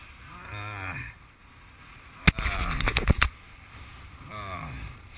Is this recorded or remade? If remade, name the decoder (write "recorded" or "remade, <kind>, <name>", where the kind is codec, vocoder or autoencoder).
recorded